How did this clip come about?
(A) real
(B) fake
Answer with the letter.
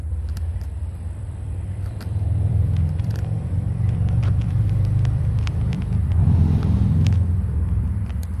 B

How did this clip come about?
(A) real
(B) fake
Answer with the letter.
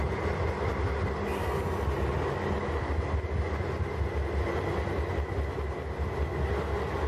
A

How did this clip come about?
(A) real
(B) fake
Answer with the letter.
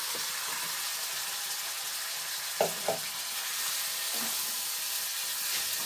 A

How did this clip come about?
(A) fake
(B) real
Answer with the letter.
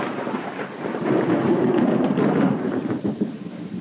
A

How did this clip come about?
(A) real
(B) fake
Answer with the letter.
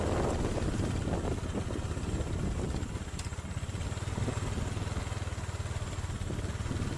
A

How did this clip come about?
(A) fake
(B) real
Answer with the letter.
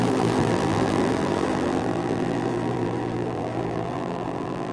A